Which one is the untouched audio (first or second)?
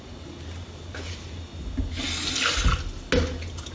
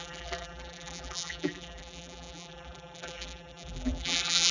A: first